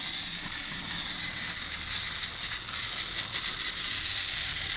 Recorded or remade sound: recorded